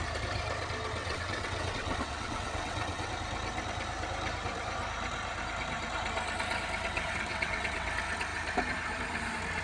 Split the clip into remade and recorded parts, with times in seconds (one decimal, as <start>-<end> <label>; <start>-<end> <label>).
0.0-1.0 recorded; 1.0-3.1 remade; 3.1-6.9 recorded; 6.9-7.9 remade; 7.9-9.6 recorded